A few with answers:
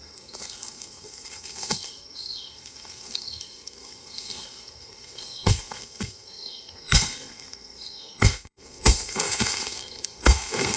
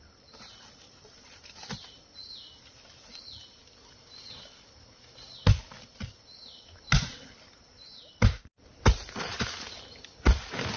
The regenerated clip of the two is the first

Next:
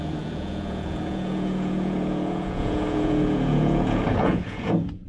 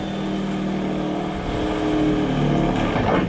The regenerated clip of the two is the first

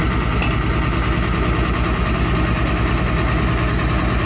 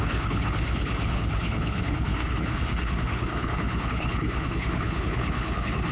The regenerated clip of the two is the second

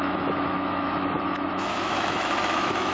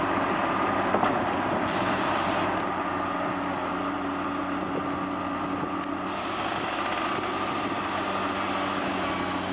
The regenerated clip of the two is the first